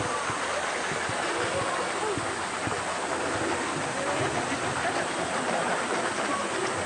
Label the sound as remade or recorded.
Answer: recorded